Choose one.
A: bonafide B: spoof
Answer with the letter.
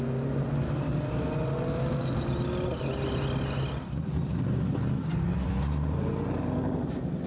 A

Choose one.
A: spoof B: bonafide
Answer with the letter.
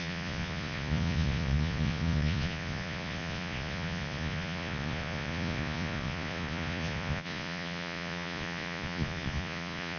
A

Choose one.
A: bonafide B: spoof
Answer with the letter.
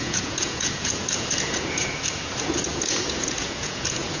B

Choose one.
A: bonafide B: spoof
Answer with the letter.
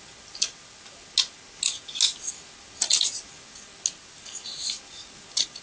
A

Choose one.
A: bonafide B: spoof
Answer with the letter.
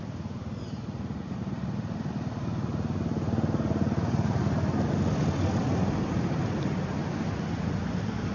A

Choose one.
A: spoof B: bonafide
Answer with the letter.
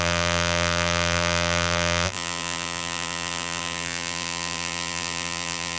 A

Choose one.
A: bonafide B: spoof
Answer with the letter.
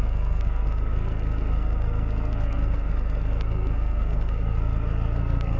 B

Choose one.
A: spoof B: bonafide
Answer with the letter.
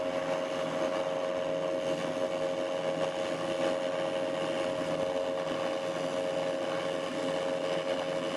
B